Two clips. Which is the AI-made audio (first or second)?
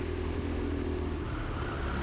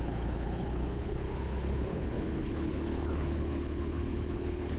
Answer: second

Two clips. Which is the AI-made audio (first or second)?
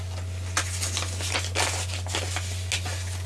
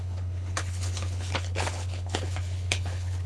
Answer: second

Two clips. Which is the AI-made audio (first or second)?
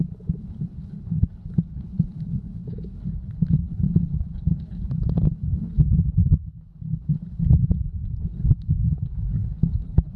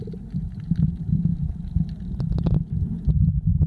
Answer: first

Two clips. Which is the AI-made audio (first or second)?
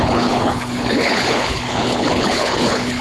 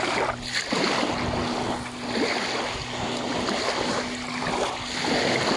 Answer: first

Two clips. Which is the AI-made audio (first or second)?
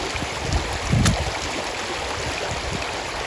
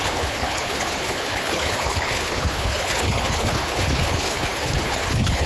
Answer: second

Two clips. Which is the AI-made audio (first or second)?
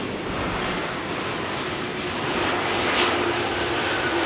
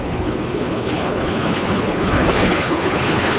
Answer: second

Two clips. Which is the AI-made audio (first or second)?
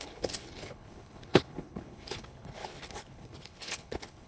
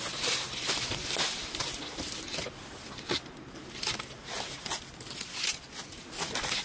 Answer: first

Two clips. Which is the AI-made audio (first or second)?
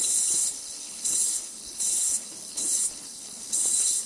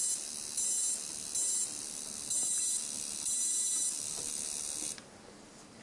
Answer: first